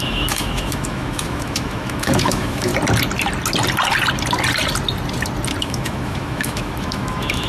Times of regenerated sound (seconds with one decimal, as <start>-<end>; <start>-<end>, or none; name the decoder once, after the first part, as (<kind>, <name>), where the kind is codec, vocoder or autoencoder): 0.0-2.7 (autoencoder, DAC-VAE); 5.6-7.5